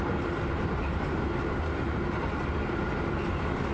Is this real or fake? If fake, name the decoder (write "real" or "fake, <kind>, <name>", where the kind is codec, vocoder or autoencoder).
real